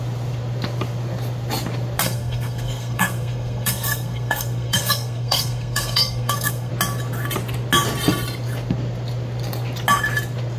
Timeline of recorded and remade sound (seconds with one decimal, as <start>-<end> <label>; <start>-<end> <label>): 0.0-2.0 recorded; 2.0-6.7 remade; 6.7-10.6 recorded